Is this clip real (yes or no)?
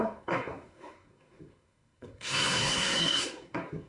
no